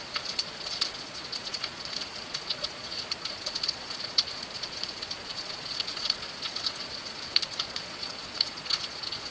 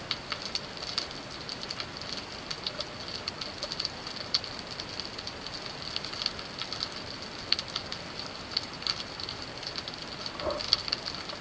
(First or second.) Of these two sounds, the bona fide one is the second